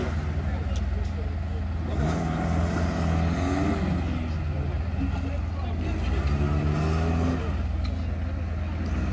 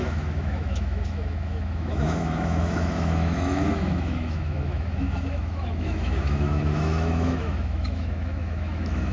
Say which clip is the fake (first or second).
second